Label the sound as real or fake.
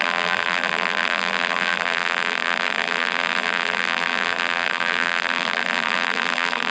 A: fake